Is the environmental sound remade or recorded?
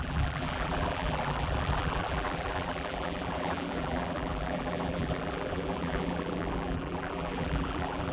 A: remade